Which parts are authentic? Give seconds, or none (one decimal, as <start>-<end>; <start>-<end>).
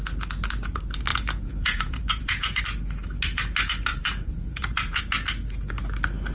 0.0-1.1; 2.6-3.9; 5.0-6.3